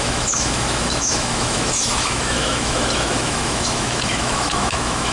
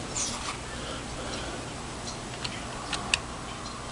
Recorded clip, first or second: second